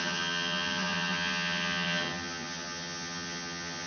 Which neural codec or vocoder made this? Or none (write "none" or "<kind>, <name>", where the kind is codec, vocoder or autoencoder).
vocoder, HiFi-GAN